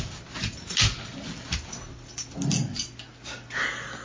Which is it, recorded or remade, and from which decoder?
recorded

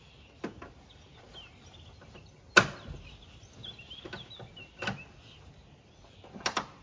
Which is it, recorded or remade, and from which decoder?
recorded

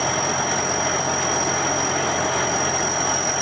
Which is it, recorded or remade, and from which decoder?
recorded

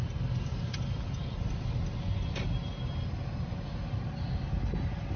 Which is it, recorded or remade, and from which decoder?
recorded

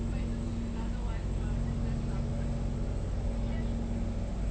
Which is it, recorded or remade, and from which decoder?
recorded